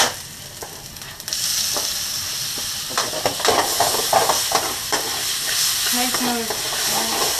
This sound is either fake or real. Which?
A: real